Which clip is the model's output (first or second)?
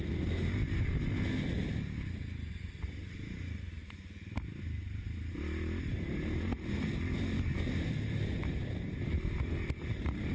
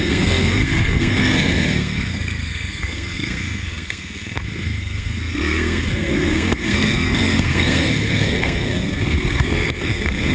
second